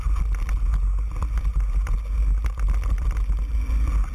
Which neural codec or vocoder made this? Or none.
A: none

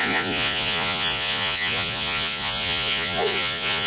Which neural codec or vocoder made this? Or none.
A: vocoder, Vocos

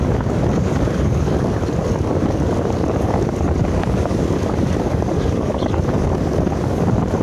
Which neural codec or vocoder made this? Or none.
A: codec, DAC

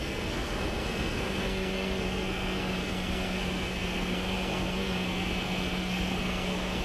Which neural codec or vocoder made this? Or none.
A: codec, SNAC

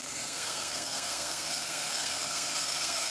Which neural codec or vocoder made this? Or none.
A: codec, SNAC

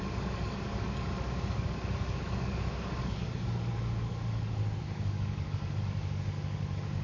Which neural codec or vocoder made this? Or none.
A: codec, DAC